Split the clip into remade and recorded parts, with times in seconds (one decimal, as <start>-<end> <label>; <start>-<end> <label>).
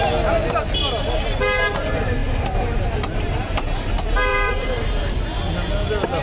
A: 0.0-2.2 recorded; 2.2-3.9 remade; 3.9-4.3 recorded; 4.3-5.2 remade; 5.2-6.2 recorded